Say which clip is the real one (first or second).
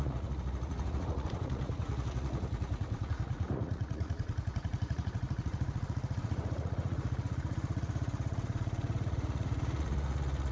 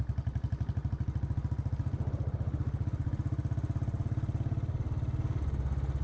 second